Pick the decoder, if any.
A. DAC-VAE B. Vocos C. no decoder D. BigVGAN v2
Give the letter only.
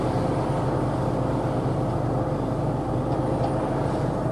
C